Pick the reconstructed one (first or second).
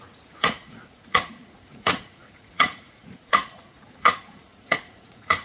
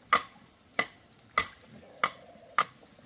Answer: first